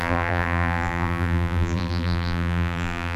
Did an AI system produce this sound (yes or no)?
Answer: yes